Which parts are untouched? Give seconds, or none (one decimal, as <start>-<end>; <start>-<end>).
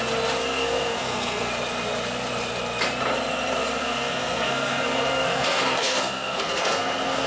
0.0-0.4; 1.5-3.8